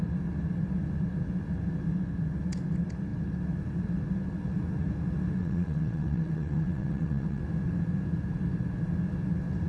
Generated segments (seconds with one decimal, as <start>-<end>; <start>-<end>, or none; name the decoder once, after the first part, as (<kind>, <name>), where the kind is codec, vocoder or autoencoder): 5.4-7.4 (vocoder, WaveNeXt)